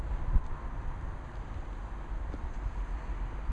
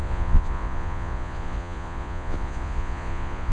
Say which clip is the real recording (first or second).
first